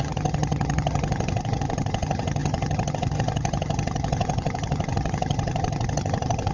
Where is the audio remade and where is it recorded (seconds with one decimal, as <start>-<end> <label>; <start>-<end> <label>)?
0.0-6.5 remade